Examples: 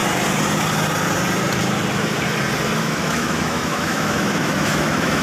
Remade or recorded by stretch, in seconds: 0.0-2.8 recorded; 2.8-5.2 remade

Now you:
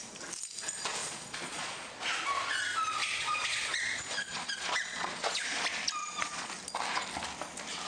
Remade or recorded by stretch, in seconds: 0.0-1.0 recorded; 1.0-1.9 remade; 1.9-3.0 recorded; 3.0-5.6 remade; 5.6-6.0 recorded; 6.0-6.5 remade; 6.5-7.9 recorded

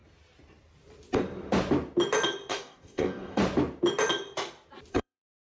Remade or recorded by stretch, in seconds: 0.0-2.5 recorded; 2.5-3.4 remade; 3.4-4.9 recorded; 4.9-5.5 remade

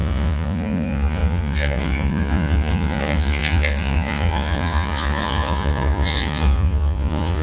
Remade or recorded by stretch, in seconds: 0.0-7.4 remade

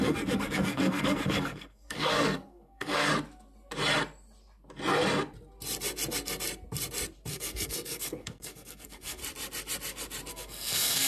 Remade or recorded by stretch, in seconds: 0.0-3.1 remade; 3.1-7.3 recorded; 7.3-9.2 remade; 9.2-10.3 recorded; 10.3-11.1 remade